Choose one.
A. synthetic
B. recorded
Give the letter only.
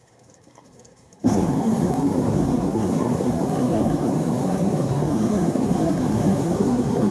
A